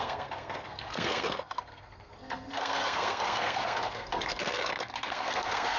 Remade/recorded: remade